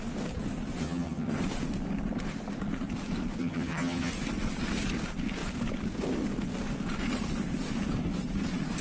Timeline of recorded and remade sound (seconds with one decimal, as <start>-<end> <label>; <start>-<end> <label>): 0.0-0.8 recorded; 0.8-1.4 remade; 1.4-3.4 recorded; 3.4-4.1 remade; 4.1-8.8 recorded